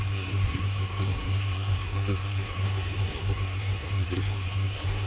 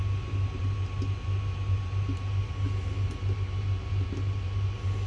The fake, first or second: first